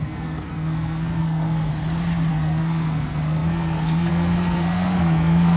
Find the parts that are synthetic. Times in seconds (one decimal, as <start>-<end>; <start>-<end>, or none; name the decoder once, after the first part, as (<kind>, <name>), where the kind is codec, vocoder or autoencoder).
0.0-1.7 (codec, SNAC); 2.3-5.6